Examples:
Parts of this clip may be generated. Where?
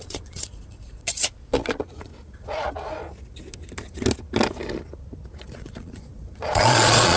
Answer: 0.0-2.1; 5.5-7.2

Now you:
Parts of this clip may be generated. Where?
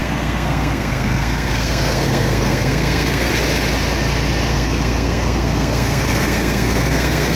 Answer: 0.0-3.3; 4.5-7.4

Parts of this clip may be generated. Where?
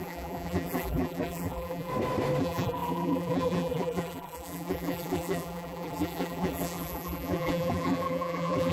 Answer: 0.0-1.9; 2.4-8.7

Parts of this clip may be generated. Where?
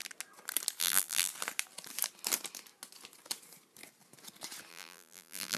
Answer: 0.8-1.3; 4.7-5.6